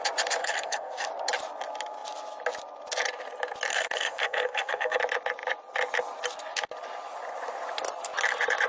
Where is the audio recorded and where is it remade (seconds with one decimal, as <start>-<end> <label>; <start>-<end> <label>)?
0.0-0.4 recorded; 0.4-1.1 remade; 1.1-3.7 recorded; 3.7-5.0 remade; 5.0-8.7 recorded